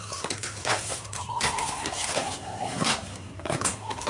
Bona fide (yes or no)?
no